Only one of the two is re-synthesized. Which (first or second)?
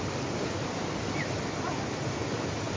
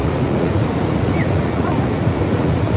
second